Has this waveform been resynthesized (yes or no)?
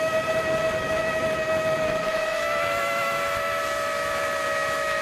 yes